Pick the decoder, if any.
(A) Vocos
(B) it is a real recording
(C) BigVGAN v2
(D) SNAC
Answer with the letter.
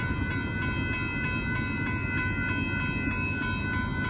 B